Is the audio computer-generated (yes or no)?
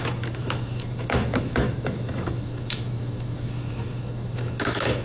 yes